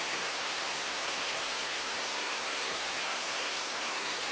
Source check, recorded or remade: remade